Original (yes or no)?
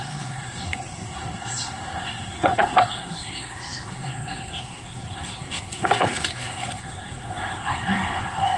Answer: no